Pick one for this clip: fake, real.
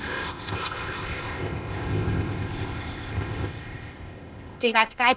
fake